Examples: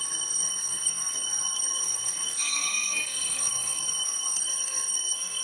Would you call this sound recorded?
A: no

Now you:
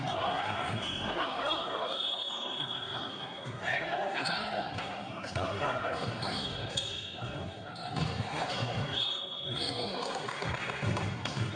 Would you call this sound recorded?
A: no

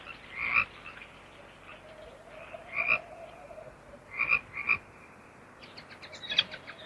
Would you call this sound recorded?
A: yes